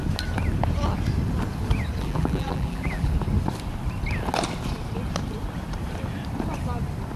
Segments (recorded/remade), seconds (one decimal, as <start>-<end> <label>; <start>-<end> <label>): 0.0-2.0 recorded; 2.0-3.1 remade; 3.1-7.2 recorded